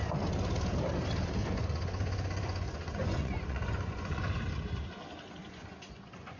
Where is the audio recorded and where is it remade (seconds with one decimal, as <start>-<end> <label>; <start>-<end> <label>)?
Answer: 0.0-1.4 recorded; 1.4-4.4 remade; 4.4-5.4 recorded; 5.4-6.4 remade